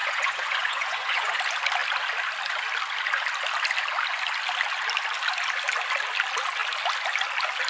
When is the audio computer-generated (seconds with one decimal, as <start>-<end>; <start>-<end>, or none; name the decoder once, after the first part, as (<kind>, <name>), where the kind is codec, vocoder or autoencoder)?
0.0-1.4 (vocoder, Vocos)

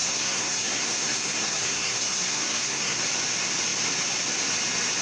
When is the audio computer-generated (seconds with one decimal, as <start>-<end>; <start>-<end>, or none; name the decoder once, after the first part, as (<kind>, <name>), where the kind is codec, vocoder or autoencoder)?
0.0-3.0 (codec, SNAC)

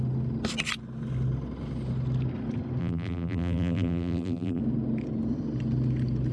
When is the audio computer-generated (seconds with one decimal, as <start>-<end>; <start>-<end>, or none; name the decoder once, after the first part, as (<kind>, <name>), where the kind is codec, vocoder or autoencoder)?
2.8-4.6 (vocoder, BigVGAN v2)

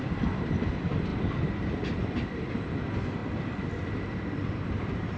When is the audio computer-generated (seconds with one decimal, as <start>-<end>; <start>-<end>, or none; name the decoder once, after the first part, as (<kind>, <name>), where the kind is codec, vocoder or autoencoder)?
0.0-5.2 (vocoder, BigVGAN v2)